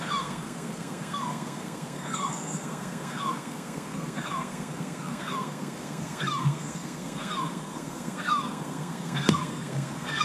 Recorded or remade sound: remade